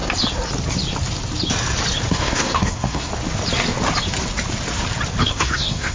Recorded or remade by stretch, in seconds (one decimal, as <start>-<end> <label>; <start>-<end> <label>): 0.0-2.1 recorded; 2.1-3.1 remade; 3.1-5.2 recorded; 5.2-5.9 remade